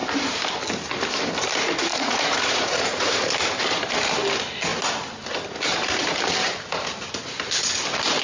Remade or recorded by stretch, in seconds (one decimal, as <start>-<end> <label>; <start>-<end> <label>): 0.0-1.9 recorded; 1.9-3.1 remade; 3.1-8.2 recorded